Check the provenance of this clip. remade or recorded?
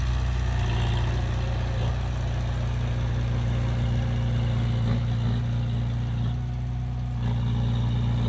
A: recorded